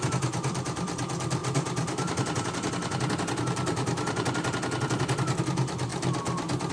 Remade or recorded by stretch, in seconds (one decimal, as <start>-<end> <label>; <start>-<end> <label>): 0.0-5.9 remade; 5.9-6.7 recorded